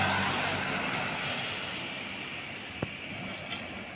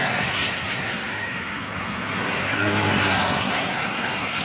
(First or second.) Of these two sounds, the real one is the first